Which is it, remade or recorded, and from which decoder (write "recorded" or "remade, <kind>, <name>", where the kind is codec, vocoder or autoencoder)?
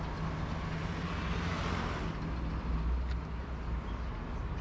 recorded